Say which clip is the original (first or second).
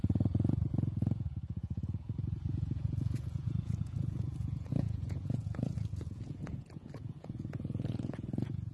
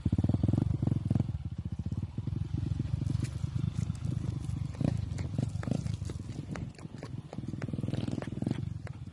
second